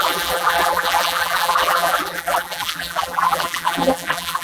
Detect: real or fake fake